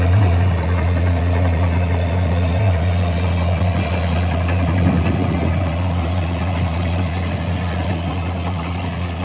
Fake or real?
fake